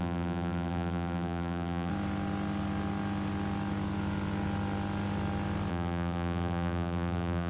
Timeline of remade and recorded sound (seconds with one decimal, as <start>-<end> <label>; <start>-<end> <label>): 0.0-1.9 remade; 1.9-5.7 recorded; 5.7-7.5 remade

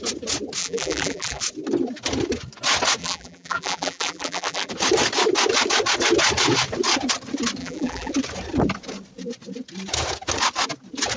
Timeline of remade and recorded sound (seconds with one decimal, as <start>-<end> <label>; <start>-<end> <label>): 0.0-0.6 recorded; 0.6-1.4 remade; 1.4-3.0 recorded; 3.0-4.7 remade; 4.7-7.6 recorded; 7.6-8.1 remade; 8.1-11.2 recorded

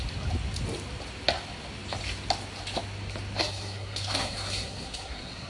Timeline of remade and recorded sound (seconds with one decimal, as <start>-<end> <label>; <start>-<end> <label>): 0.0-3.4 recorded; 3.4-5.5 remade

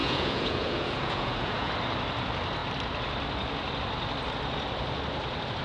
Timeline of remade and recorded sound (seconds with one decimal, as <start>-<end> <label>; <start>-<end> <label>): 0.0-1.7 remade; 1.7-5.6 recorded

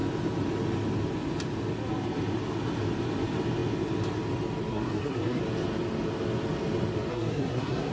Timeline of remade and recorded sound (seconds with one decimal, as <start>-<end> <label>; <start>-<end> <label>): 0.0-4.7 recorded; 4.7-5.4 remade; 5.4-7.1 recorded; 7.1-7.9 remade

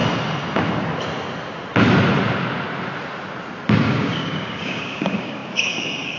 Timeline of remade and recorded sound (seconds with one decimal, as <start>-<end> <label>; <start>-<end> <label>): 0.0-3.7 recorded; 3.7-6.2 remade

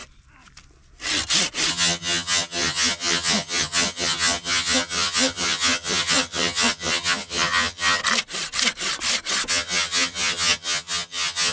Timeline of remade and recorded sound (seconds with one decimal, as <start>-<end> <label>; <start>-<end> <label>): 0.0-1.7 recorded; 1.7-8.0 remade; 8.0-9.5 recorded; 9.5-11.5 remade